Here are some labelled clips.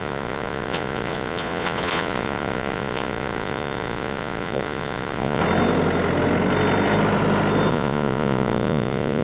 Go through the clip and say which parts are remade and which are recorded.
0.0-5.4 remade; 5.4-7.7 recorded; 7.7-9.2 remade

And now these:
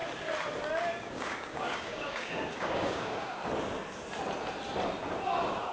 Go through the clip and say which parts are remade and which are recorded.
0.0-0.8 recorded; 0.8-3.4 remade; 3.4-5.7 recorded

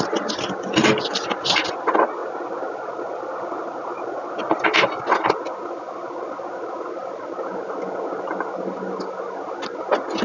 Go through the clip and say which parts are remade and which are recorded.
0.0-10.2 recorded

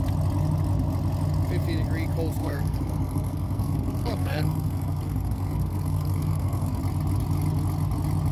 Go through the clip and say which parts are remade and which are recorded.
0.0-2.4 recorded; 2.4-6.8 remade; 6.8-8.3 recorded

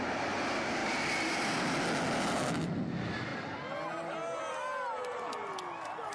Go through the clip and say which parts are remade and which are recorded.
0.0-6.1 recorded

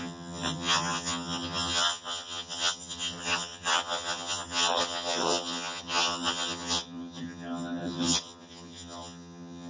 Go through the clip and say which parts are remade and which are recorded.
0.0-9.7 remade